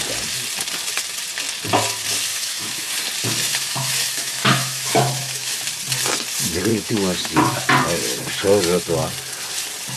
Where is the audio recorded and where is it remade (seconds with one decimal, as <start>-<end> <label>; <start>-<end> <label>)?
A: 0.0-2.3 recorded; 2.3-2.9 remade; 2.9-3.5 recorded; 3.5-5.6 remade; 5.6-6.7 recorded; 6.7-7.6 remade; 7.6-10.0 recorded